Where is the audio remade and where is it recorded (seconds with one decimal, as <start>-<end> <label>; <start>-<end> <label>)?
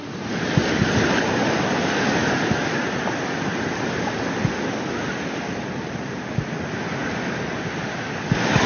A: 0.0-8.7 recorded